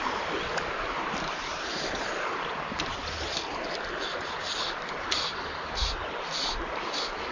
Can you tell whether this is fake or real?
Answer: fake